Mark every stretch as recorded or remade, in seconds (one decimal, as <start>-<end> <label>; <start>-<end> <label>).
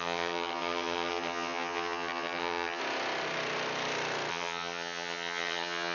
0.0-2.8 remade; 2.8-4.3 recorded; 4.3-5.9 remade